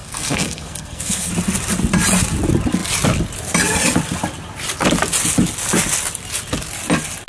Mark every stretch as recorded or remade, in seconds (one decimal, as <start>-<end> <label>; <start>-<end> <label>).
0.0-1.3 remade; 1.3-7.3 recorded